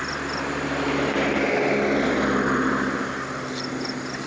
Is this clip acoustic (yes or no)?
yes